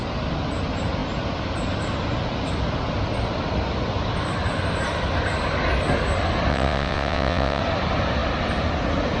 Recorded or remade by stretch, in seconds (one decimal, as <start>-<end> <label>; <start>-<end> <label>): 0.0-6.5 recorded; 6.5-7.6 remade; 7.6-9.2 recorded